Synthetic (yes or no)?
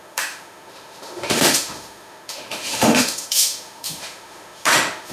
yes